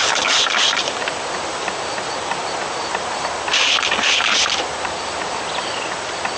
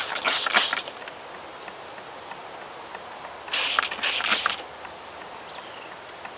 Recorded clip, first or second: second